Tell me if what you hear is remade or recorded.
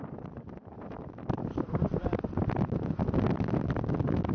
remade